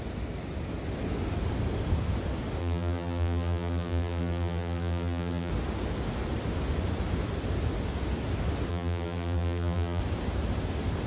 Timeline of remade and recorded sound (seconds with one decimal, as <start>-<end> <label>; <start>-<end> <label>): 0.0-2.6 recorded; 2.6-5.5 remade; 5.5-8.7 recorded; 8.7-10.0 remade; 10.0-11.1 recorded